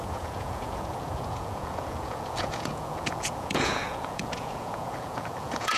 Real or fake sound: fake